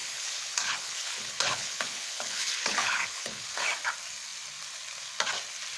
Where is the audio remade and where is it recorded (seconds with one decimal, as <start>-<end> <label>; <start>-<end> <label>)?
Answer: 0.0-3.5 remade; 3.5-5.8 recorded